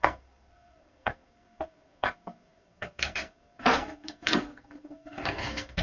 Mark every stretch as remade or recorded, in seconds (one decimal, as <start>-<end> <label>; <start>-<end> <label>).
0.0-5.8 remade